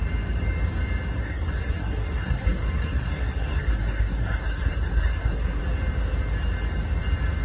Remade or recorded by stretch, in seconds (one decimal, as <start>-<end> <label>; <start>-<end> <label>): 0.0-1.2 recorded; 1.2-5.6 remade; 5.6-7.4 recorded